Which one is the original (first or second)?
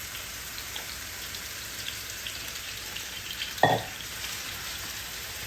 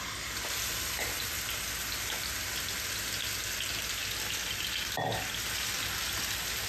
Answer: second